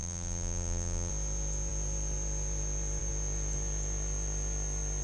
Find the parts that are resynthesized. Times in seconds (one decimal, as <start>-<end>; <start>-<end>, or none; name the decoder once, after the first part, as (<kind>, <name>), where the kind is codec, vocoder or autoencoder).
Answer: 0.0-1.1 (vocoder, BigVGAN v2)